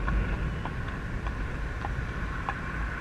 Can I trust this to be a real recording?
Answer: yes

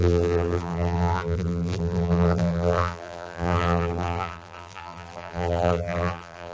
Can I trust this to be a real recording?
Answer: no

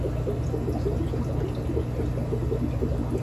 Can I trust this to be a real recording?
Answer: yes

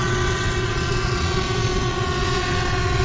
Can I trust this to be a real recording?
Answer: no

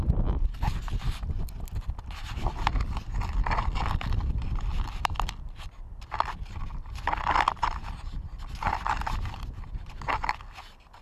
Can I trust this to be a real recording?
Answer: yes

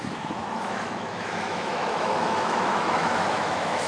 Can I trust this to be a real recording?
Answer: no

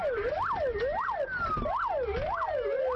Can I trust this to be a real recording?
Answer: yes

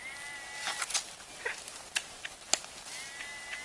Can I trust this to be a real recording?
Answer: yes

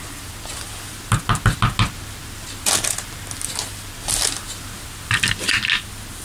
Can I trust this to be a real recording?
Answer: yes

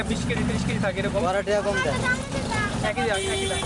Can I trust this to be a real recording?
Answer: yes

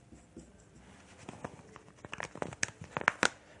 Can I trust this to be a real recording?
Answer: yes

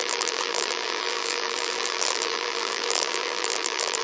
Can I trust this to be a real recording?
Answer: no